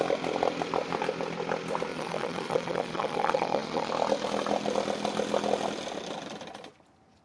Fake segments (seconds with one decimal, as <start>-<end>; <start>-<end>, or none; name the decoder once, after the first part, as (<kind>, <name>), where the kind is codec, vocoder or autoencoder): 1.9-3.9 (vocoder, Vocos)